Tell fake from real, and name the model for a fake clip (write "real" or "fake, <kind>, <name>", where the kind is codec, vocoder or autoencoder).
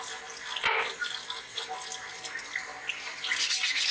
real